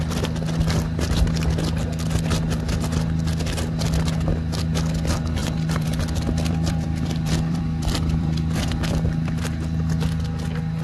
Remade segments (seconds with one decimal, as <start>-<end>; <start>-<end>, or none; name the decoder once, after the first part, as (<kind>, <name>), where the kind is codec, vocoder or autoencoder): 5.4-9.4 (vocoder, BigVGAN v2)